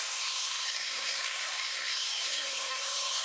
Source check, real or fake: fake